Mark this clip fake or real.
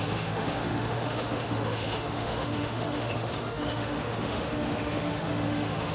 fake